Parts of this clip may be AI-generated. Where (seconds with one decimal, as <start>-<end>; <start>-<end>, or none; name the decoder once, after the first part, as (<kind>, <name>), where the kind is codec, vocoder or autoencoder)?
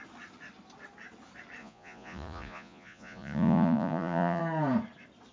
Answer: 1.6-4.4 (vocoder, Vocos)